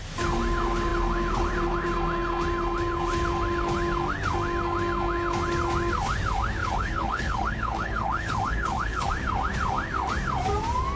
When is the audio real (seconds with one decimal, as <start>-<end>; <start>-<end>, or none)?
0.0-6.6; 9.1-11.0

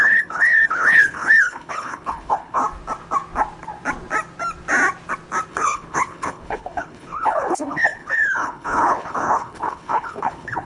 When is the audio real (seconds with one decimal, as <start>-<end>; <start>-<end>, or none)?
2.6-5.5

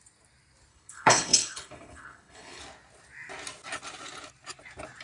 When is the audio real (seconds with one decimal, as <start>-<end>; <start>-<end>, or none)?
0.0-0.7; 2.6-5.0

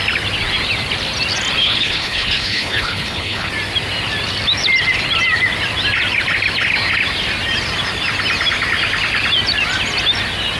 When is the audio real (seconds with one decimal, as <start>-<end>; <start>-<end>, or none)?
0.0-1.6; 3.5-10.6